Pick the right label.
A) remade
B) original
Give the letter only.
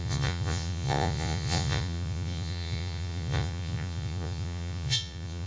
A